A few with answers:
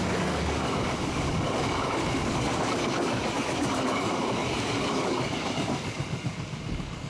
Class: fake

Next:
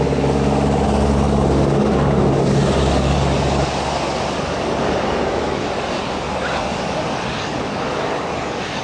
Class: fake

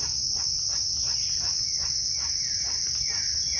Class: real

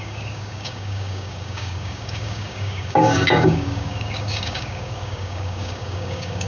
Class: fake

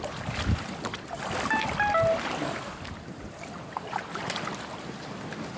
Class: real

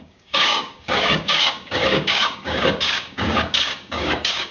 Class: fake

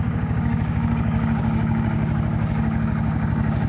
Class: fake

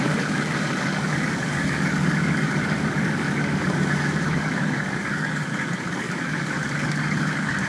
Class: fake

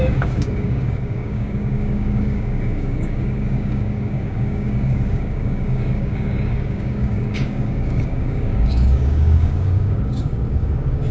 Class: fake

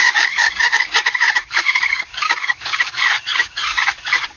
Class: fake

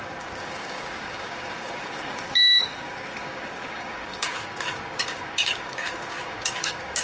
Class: fake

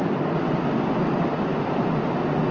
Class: real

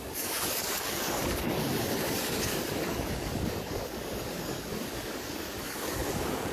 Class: fake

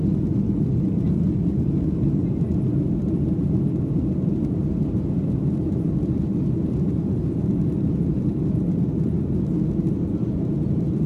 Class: real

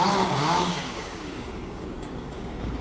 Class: fake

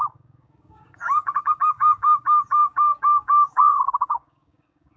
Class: fake